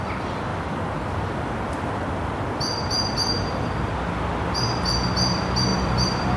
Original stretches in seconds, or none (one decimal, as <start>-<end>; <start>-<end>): 0.0-5.7